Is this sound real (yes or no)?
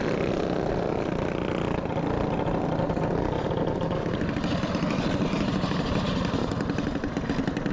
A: yes